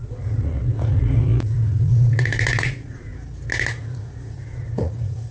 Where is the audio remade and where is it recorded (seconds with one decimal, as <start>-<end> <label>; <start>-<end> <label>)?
0.0-3.1 remade; 3.1-3.7 recorded; 3.7-5.3 remade